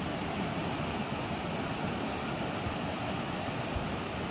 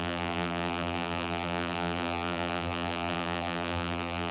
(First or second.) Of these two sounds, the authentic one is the first